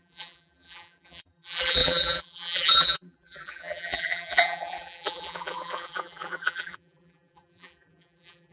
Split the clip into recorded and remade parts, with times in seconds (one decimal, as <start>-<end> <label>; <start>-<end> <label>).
0.0-8.5 remade